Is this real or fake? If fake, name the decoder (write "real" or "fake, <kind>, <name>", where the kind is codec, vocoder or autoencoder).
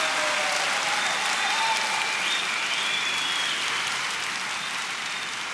real